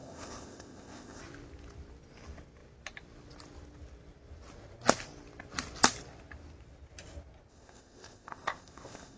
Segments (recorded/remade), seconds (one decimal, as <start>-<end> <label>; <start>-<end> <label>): 0.0-1.2 remade; 1.2-7.5 recorded; 7.5-9.2 remade